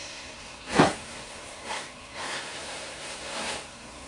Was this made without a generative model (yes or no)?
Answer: no